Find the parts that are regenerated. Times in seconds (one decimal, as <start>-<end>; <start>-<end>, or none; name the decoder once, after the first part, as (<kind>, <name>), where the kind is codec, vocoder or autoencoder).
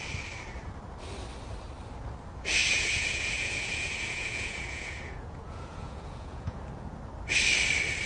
2.6-6.6 (vocoder, Vocos)